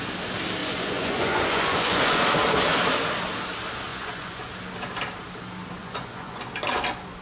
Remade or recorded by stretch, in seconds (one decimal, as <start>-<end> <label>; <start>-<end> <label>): 0.0-0.6 recorded; 0.6-2.2 remade; 2.2-3.9 recorded; 3.9-4.5 remade; 4.5-5.8 recorded; 5.8-6.4 remade; 6.4-7.2 recorded